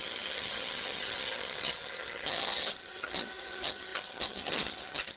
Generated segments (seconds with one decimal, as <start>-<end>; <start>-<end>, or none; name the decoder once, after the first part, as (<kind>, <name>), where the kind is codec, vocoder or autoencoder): 0.0-5.2 (vocoder, HiFi-GAN)